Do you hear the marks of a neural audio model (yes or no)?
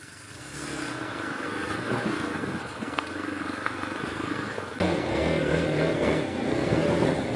yes